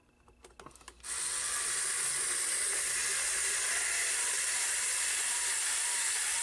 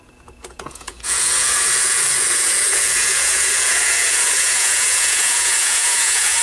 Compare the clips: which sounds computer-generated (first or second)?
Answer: second